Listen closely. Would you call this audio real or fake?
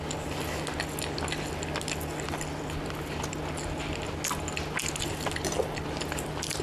real